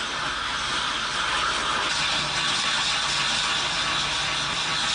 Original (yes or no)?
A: yes